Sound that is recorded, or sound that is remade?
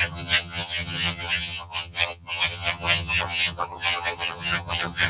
remade